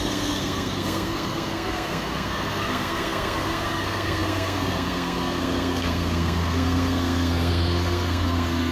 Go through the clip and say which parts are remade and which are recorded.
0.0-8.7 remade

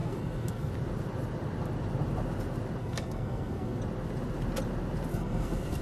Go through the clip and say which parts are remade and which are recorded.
0.0-0.7 remade; 0.7-2.8 recorded; 2.8-3.8 remade; 3.8-5.1 recorded; 5.1-5.8 remade

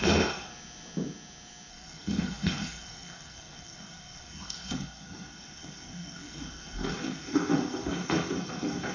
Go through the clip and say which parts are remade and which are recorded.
0.0-0.5 remade; 0.5-1.7 recorded; 1.7-8.9 remade